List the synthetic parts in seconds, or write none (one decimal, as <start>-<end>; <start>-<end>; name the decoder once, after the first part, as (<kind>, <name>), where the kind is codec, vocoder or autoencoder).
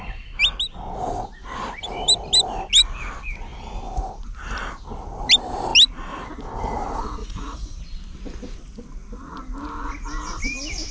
7.2-7.8 (vocoder, Vocos)